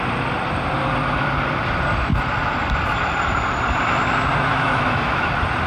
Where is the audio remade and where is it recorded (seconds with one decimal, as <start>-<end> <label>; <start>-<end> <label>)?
0.0-4.5 recorded; 4.5-5.3 remade; 5.3-5.7 recorded